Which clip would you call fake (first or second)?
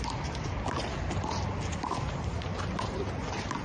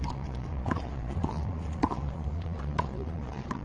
second